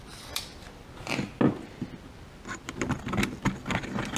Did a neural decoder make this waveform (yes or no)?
no